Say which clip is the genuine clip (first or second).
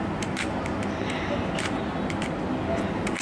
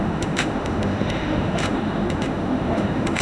first